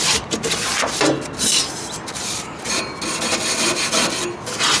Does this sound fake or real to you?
real